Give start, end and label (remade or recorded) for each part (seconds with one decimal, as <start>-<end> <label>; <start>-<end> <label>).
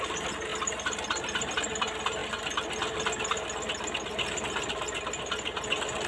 0.0-6.1 recorded